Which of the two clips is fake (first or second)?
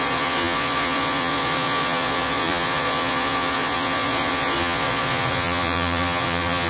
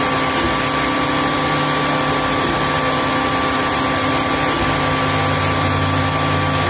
first